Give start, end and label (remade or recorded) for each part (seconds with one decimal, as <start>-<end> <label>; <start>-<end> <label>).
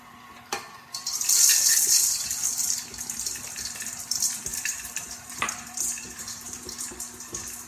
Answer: 0.0-4.5 recorded; 4.5-6.9 remade; 6.9-7.7 recorded